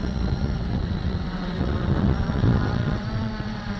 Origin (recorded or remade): remade